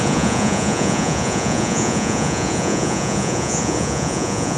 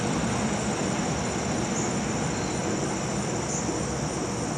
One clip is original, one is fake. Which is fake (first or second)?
first